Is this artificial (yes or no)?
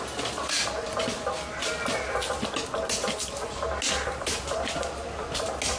no